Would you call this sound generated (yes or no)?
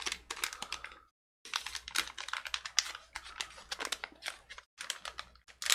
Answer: no